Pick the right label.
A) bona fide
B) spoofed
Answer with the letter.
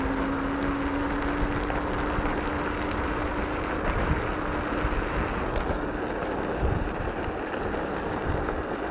A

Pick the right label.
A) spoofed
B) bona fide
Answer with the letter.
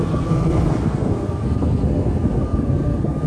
A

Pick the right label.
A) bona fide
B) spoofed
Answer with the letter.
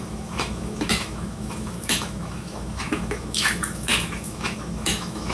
B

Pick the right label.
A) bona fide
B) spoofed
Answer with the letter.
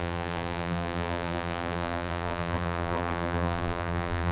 B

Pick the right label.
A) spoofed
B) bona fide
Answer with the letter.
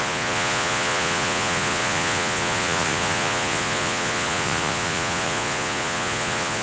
A